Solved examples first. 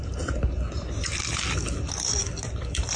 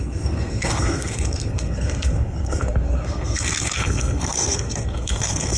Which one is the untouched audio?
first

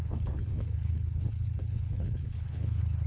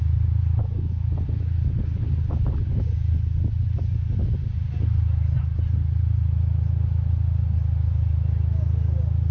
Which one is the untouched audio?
second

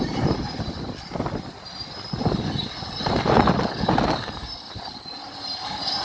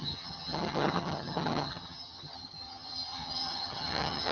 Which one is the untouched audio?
first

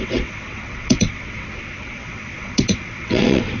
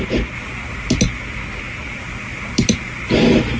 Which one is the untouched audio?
second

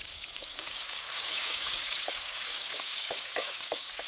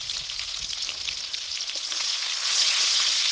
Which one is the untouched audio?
second